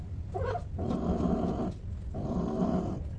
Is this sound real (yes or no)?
yes